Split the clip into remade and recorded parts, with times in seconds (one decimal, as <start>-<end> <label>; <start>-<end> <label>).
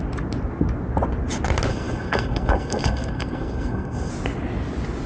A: 0.0-1.7 recorded; 1.7-4.1 remade; 4.1-5.1 recorded